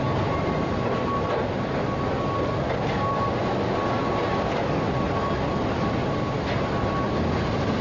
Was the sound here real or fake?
real